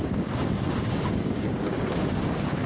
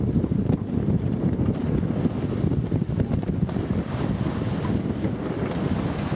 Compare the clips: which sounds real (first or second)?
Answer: second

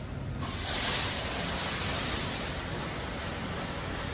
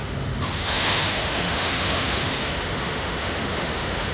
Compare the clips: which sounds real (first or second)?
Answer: first